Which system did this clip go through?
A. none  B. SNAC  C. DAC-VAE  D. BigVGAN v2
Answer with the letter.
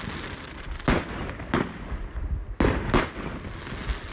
A